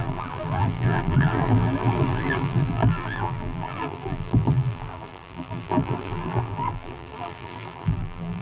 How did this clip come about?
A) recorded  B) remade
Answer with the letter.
B